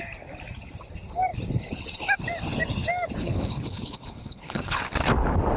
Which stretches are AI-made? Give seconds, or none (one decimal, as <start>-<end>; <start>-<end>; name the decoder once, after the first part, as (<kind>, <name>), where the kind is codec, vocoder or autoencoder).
3.2-4.8 (codec, HILCodec)